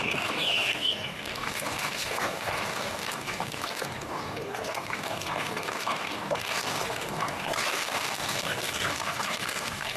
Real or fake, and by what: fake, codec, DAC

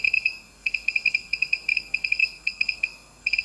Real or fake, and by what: fake, codec, SNAC